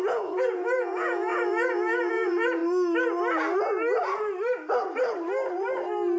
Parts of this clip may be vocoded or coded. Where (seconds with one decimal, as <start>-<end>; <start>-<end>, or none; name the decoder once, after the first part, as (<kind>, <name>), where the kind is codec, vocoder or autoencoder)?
0.0-2.6 (vocoder, Vocos)